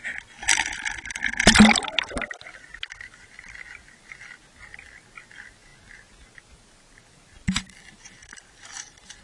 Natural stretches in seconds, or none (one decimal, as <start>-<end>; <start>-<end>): 0.0-9.2